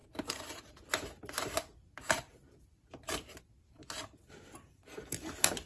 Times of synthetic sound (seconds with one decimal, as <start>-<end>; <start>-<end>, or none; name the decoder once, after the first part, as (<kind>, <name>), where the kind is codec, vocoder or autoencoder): 0.0-3.8 (vocoder, BigVGAN v2); 4.7-5.7